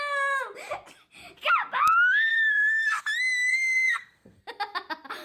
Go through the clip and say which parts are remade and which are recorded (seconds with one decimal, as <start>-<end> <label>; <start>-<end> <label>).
0.0-2.3 recorded; 2.3-3.0 remade; 3.0-3.5 recorded; 3.5-4.4 remade; 4.4-5.2 recorded